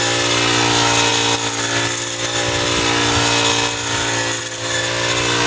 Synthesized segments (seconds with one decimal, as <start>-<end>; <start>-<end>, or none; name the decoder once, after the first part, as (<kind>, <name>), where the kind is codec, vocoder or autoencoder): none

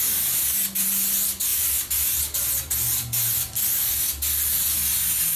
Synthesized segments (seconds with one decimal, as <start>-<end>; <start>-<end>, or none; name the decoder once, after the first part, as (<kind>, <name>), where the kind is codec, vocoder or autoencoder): 1.5-2.2 (vocoder, BigVGAN v2); 2.9-3.9

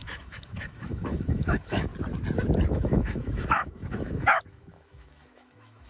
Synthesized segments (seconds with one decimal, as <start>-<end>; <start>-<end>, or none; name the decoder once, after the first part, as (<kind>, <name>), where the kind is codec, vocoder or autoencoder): 0.0-1.9 (autoencoder, DAC-VAE); 2.7-5.9

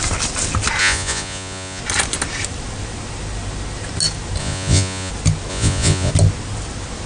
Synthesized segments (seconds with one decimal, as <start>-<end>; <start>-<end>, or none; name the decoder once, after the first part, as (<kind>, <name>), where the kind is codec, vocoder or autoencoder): 0.8-1.8 (vocoder, Vocos); 4.4-5.1; 5.5-6.1

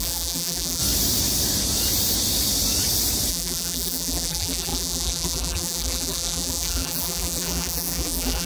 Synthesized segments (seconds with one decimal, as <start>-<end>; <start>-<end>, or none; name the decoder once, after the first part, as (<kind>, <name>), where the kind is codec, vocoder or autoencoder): 0.0-0.8 (vocoder, BigVGAN v2); 3.3-8.5

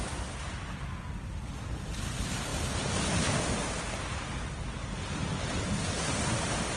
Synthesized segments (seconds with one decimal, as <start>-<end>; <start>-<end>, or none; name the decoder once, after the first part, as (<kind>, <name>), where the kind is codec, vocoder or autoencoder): none